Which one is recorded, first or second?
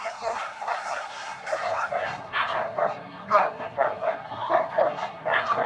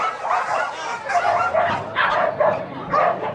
second